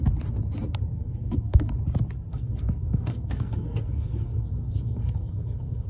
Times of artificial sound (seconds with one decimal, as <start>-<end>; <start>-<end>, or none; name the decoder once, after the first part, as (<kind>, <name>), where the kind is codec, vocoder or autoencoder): 0.9-1.7 (codec, SNAC); 2.3-5.9